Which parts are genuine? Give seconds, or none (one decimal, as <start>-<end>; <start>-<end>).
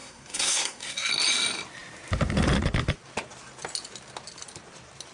1.1-5.1